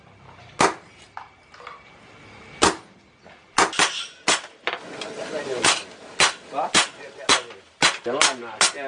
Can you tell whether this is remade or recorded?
recorded